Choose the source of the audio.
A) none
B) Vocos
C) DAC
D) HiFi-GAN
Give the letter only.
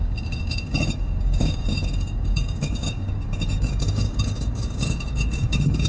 C